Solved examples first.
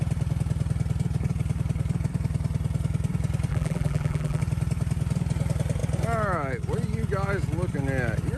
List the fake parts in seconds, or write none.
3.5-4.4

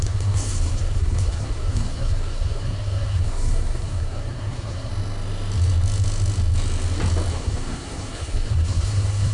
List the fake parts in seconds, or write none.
0.0-4.9; 7.3-9.3

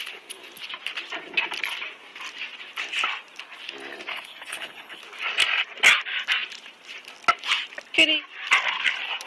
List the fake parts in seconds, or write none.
4.1-5.0

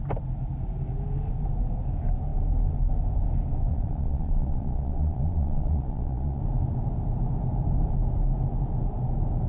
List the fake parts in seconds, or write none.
3.7-6.4

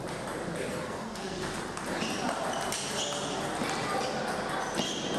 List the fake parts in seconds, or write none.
0.7-1.6

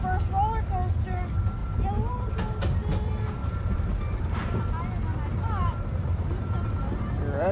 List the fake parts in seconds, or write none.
3.4-4.6; 5.3-6.8

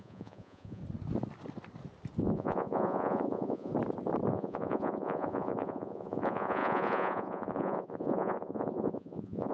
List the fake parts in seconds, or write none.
0.0-0.8; 2.2-3.7; 4.3-9.5

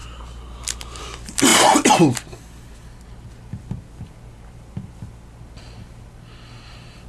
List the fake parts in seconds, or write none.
none